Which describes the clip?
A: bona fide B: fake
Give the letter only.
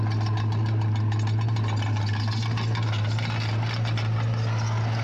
A